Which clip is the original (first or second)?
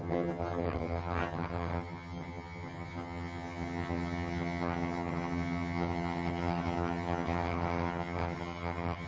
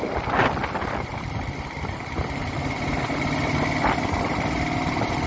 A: second